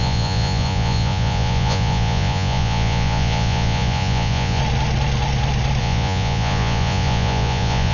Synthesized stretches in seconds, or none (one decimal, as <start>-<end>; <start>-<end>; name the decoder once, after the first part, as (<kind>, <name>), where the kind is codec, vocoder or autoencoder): 0.0-4.6 (vocoder, Vocos); 5.8-7.9